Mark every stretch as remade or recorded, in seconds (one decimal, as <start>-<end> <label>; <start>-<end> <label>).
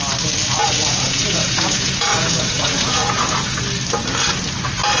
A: 0.0-0.6 recorded; 0.6-3.6 remade; 3.6-5.0 recorded